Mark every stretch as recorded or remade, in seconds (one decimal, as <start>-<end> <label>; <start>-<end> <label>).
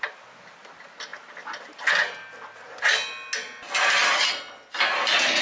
0.0-5.4 recorded